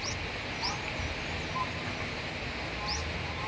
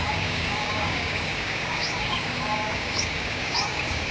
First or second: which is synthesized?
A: second